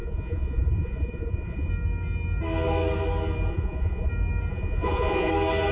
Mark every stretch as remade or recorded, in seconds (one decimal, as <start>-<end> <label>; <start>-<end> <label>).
0.0-1.7 remade; 1.7-3.5 recorded; 3.5-4.1 remade; 4.1-4.5 recorded; 4.5-5.3 remade; 5.3-5.7 recorded